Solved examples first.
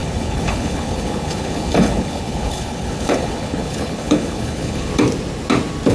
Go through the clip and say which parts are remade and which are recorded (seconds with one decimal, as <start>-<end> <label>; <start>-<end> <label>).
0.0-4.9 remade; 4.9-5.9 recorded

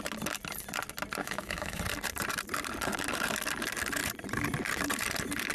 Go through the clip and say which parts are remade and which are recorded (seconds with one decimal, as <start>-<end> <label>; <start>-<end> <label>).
0.0-1.2 recorded; 1.2-1.8 remade; 1.8-5.5 recorded

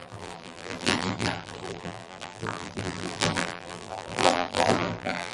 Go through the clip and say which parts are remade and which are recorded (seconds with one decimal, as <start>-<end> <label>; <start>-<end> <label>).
0.0-5.3 remade